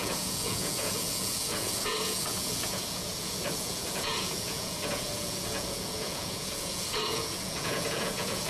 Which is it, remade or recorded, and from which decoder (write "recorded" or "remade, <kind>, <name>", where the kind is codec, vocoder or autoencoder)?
remade, vocoder, Vocos